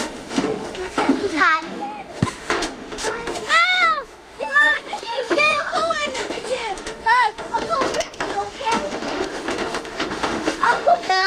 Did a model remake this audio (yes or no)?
yes